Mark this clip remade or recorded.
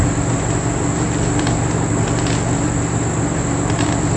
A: recorded